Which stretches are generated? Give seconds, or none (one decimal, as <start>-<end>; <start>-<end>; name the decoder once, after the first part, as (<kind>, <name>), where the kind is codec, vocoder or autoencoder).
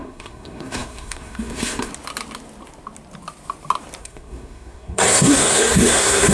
0.0-1.9 (codec, SNAC); 4.0-6.3